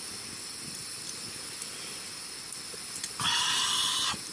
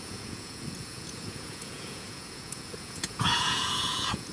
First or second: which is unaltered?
first